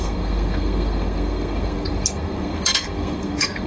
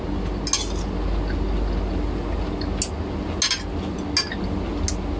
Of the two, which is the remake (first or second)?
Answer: first